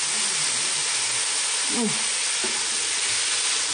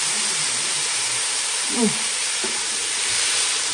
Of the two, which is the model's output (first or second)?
second